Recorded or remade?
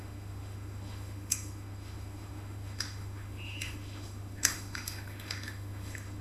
remade